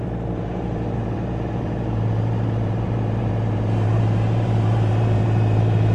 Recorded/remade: remade